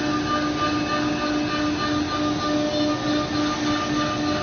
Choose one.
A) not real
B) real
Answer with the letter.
B